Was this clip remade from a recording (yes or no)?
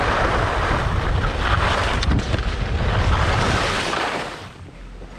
no